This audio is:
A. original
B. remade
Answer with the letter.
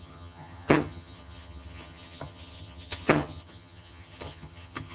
B